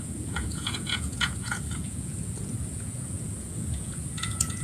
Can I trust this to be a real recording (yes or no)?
no